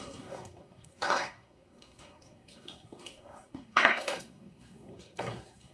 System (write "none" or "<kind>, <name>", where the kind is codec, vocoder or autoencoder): codec, SNAC